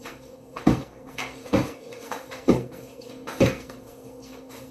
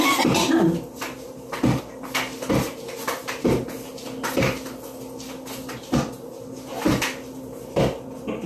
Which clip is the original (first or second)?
second